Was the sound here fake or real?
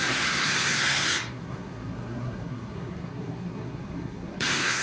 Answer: fake